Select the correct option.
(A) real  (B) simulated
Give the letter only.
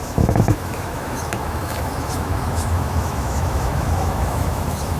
B